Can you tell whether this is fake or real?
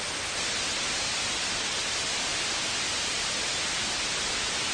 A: real